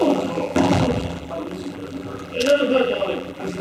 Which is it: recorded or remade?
remade